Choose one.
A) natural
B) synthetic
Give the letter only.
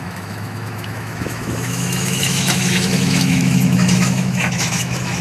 B